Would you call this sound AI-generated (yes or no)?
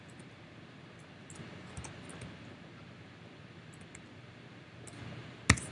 no